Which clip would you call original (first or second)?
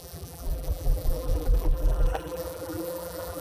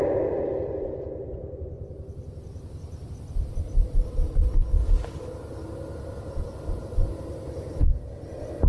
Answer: second